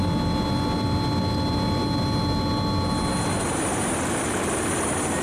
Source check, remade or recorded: recorded